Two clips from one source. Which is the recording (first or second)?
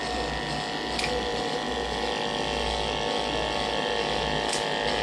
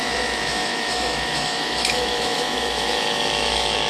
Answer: first